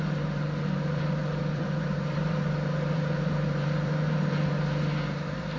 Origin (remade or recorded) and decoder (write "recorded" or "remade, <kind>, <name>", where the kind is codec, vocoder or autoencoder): remade, vocoder, BigVGAN v2